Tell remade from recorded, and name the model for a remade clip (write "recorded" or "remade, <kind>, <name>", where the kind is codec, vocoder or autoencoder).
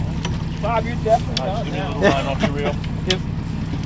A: recorded